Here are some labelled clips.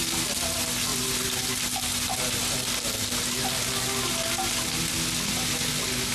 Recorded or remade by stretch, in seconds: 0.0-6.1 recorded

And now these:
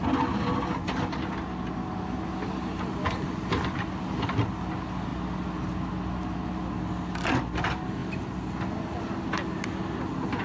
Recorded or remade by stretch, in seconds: 0.0-10.4 recorded

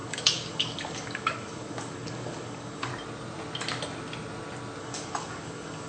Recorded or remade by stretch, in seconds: 0.0-2.9 remade; 2.9-4.8 recorded; 4.8-5.9 remade

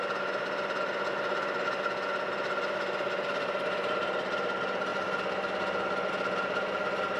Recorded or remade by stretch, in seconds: 0.0-7.2 recorded

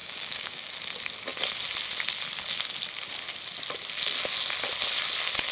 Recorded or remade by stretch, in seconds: 0.0-0.7 remade; 0.7-5.5 recorded